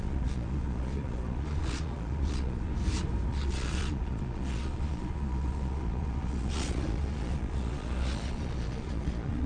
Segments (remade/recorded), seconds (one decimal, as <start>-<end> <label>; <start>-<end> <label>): 0.0-2.7 remade; 2.7-3.3 recorded; 3.3-9.5 remade